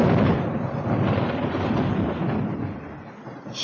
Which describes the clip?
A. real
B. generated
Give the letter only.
A